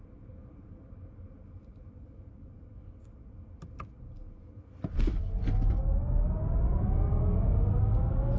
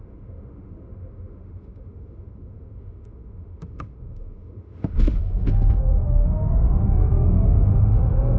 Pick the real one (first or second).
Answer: first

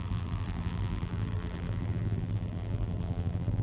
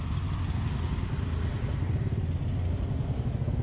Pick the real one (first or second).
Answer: second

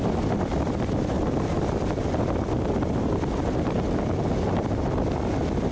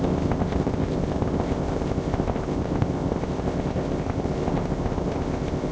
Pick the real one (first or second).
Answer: first